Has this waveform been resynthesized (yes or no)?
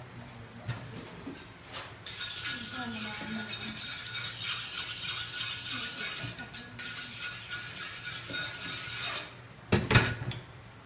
no